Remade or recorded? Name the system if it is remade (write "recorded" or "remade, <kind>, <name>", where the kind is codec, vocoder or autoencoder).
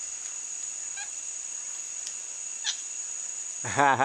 recorded